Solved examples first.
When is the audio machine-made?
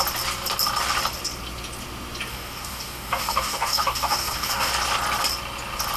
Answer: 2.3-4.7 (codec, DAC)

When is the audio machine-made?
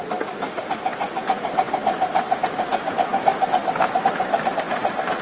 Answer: none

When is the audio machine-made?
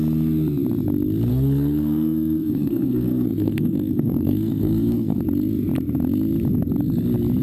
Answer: 1.3-5.2 (codec, SNAC)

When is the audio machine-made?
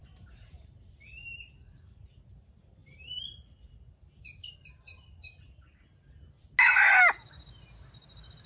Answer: 0.0-1.6 (vocoder, BigVGAN v2); 2.8-3.8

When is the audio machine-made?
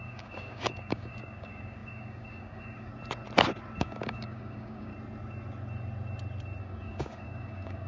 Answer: 0.0-2.9 (codec, DAC); 3.8-4.9; 6.6-7.9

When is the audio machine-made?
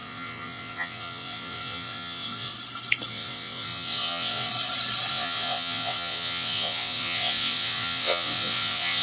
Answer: 0.0-2.5 (vocoder, WaveNeXt); 3.1-4.5; 5.1-9.0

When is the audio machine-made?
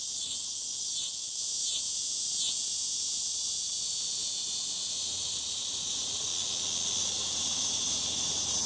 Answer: 0.0-0.7 (vocoder, Vocos); 3.2-6.3; 7.0-8.7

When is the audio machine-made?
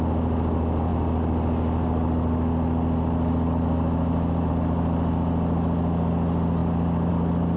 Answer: none